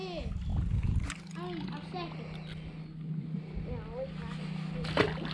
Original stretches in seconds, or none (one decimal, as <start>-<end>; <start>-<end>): 0.0-5.3